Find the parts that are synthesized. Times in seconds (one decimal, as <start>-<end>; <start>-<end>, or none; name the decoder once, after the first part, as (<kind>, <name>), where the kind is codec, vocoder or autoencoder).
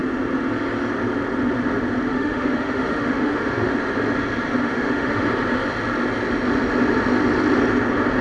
2.1-3.7 (autoencoder, DAC-VAE); 4.6-5.2